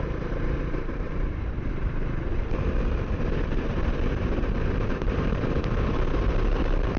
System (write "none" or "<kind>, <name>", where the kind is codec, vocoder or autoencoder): vocoder, BigVGAN v2